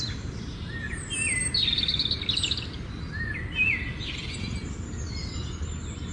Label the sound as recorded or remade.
recorded